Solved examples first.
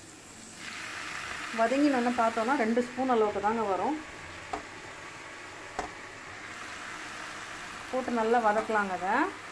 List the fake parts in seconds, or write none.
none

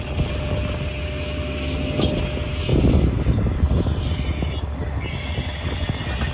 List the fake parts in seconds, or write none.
2.7-4.0 (vocoder, BigVGAN v2)

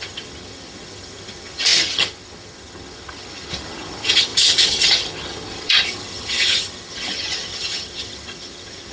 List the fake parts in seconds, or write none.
0.0-8.9 (vocoder, HiFi-GAN)

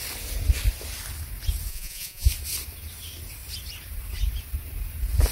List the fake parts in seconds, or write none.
1.7-2.3 (vocoder, Vocos)

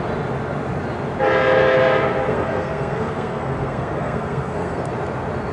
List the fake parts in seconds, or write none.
2.3-4.9 (codec, SNAC)

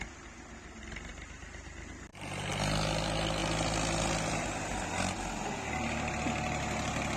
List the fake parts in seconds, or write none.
none

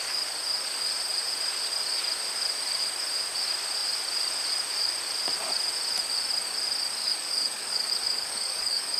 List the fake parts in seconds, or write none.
7.0-9.0 (codec, DAC)